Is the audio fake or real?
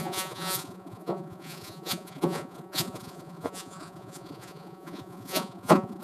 fake